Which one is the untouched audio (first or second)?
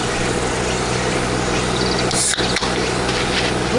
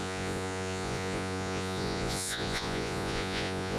first